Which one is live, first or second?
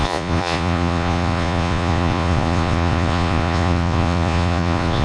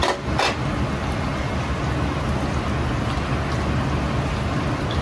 second